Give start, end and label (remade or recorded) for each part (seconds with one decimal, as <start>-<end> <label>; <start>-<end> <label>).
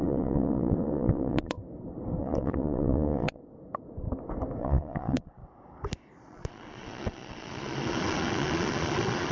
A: 0.0-1.6 remade; 1.6-2.2 recorded; 2.2-3.4 remade; 3.4-4.6 recorded; 4.6-5.4 remade; 5.4-6.0 recorded; 6.0-9.3 remade